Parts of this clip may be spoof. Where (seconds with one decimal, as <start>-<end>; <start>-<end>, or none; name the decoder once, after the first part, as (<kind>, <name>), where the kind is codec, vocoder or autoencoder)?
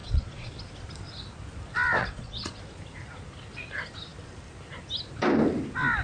0.0-0.5 (vocoder, Vocos); 2.0-2.6